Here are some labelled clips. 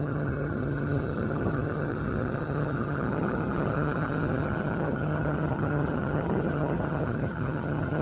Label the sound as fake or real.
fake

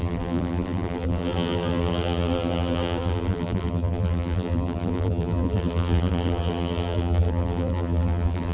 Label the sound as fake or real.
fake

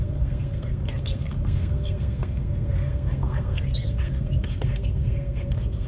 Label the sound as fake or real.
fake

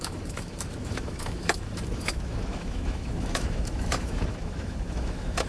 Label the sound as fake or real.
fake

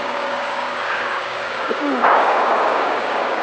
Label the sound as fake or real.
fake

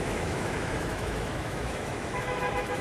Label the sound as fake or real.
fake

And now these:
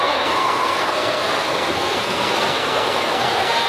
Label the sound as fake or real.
fake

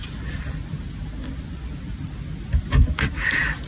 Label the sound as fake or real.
real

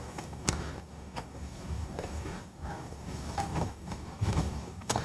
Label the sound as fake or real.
fake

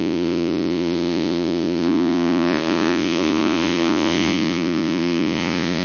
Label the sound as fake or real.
fake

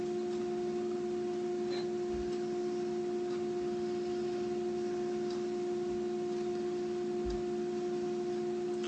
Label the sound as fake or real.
real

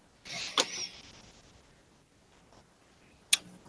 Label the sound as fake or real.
real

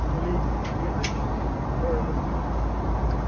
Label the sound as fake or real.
real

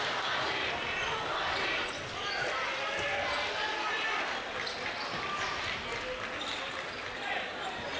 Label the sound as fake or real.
real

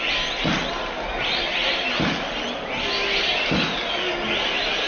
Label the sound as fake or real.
real